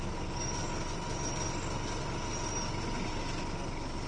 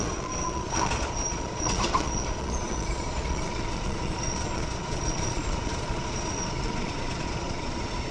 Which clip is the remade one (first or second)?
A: second